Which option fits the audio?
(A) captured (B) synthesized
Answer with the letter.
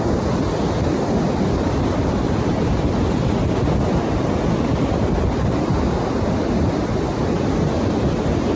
A